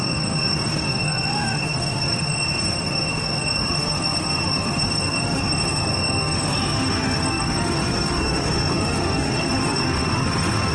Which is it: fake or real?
fake